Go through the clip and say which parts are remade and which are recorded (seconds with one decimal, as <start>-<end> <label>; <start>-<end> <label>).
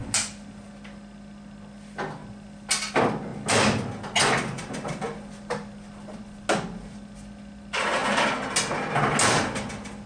0.0-10.1 recorded